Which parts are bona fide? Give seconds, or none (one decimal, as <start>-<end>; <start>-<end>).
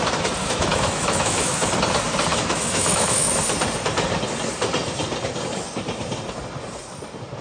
0.0-0.4; 1.7-2.3; 3.3-7.4